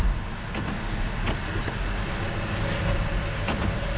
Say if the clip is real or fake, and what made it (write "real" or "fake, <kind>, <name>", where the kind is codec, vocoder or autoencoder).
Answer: real